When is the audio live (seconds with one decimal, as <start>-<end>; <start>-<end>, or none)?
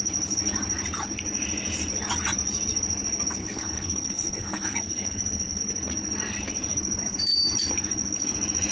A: 0.0-3.4; 5.6-8.7